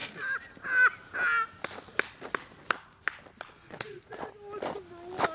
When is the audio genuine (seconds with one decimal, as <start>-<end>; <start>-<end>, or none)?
0.0-3.6; 4.3-5.3